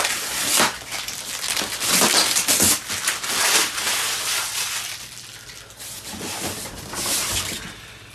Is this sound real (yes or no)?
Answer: yes